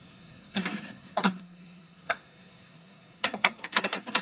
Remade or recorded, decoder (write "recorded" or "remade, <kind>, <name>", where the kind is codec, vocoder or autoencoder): remade, codec, SNAC